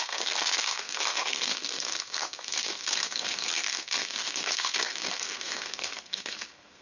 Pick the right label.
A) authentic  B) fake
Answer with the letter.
B